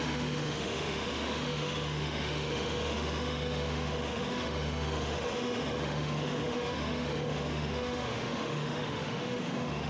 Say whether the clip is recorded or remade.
remade